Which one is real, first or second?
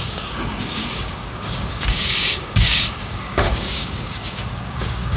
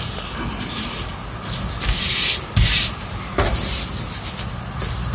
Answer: second